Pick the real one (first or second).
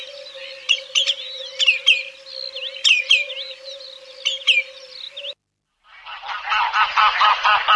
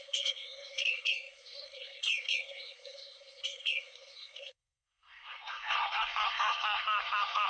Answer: first